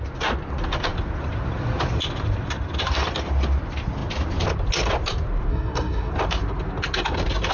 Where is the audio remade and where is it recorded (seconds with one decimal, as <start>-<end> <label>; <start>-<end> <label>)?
0.0-5.5 recorded; 5.5-6.1 remade; 6.1-7.5 recorded